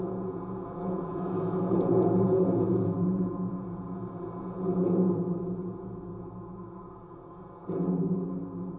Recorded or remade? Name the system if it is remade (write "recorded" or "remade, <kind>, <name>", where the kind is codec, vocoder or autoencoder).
remade, vocoder, Vocos